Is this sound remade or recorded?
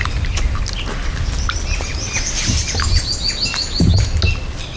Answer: recorded